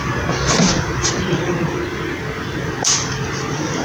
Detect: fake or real real